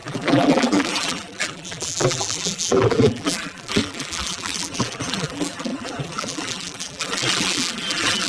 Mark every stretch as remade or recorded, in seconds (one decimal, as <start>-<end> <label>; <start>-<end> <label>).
0.0-8.3 remade